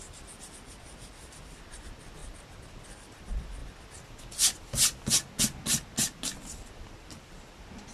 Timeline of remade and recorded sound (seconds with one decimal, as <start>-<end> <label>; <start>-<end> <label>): 0.0-7.9 recorded